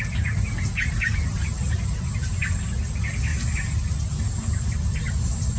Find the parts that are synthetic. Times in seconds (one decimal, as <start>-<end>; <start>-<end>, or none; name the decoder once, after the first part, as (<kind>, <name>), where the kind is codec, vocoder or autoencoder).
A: none